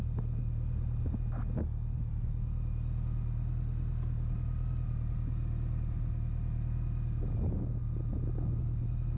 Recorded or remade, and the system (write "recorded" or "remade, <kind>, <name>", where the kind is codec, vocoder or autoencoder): recorded